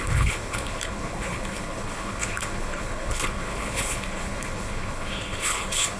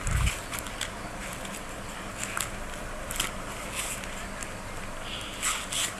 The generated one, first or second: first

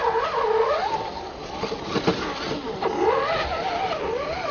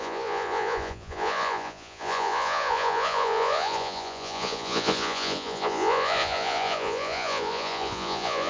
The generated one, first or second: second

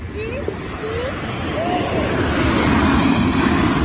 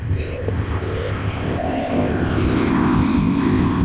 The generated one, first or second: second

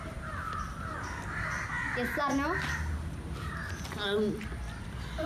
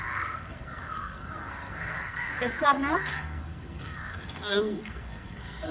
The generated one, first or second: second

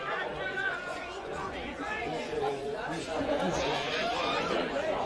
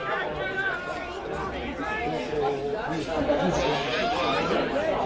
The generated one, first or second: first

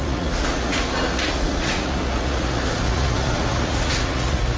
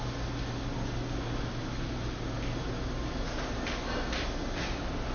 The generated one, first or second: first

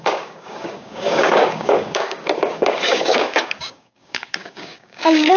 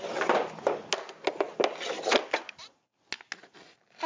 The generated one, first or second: first